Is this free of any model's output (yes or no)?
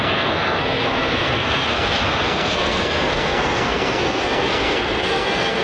no